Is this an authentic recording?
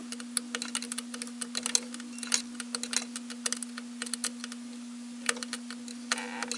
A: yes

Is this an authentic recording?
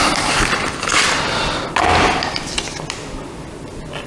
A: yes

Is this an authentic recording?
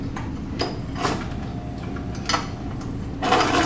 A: yes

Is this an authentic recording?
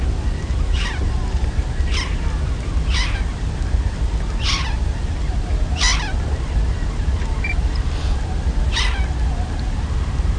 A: yes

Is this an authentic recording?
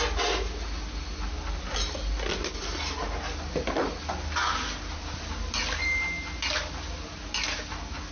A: yes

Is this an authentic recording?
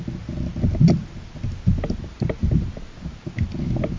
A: yes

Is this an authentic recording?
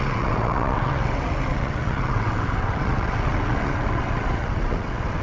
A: no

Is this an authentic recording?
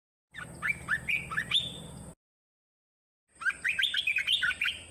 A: yes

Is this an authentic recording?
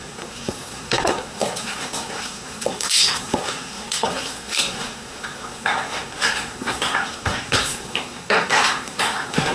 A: no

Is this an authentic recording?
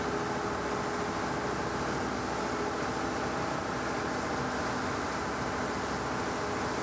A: yes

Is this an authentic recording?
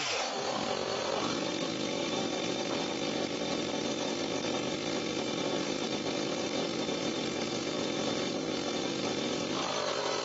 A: yes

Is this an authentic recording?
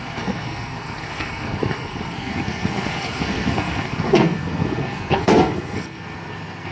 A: no